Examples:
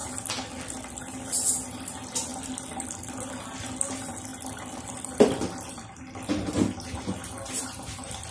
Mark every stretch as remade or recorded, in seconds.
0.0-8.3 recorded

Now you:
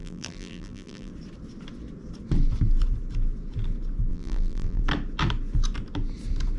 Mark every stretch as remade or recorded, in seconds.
0.0-1.1 remade; 1.1-4.1 recorded; 4.1-4.8 remade; 4.8-6.6 recorded